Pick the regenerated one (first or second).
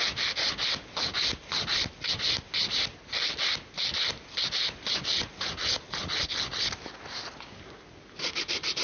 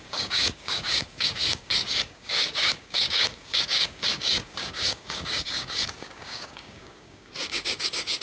second